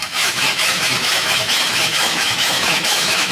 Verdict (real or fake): fake